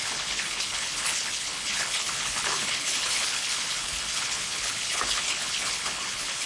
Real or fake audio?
fake